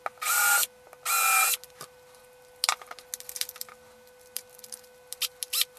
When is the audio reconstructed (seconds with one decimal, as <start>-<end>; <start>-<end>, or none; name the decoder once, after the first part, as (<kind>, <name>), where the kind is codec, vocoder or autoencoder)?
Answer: none